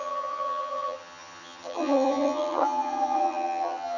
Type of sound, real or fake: fake